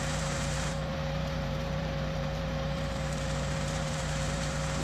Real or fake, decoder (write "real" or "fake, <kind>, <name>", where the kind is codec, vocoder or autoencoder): fake, vocoder, BigVGAN v2